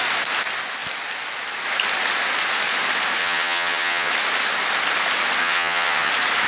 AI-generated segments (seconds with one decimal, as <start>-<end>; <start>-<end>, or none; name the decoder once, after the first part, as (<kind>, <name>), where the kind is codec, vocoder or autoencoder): 3.2-4.1 (vocoder, HiFi-GAN); 5.4-6.1